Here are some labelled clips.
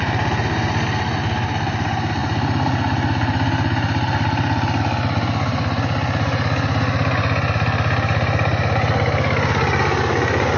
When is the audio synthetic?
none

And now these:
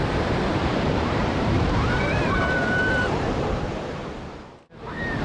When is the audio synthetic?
0.5-3.6 (vocoder, BigVGAN v2)

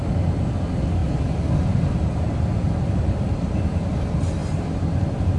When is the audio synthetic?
1.0-3.9 (vocoder, BigVGAN v2); 4.4-5.4